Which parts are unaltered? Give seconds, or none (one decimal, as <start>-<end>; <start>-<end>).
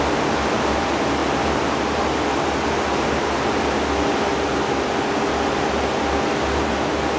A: 0.0-7.2